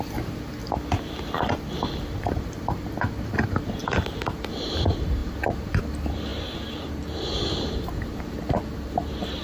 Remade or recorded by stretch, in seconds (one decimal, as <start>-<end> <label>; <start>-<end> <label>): 0.0-0.6 remade; 0.6-2.2 recorded; 2.2-9.4 remade